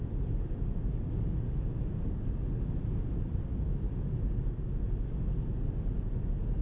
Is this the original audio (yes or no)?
yes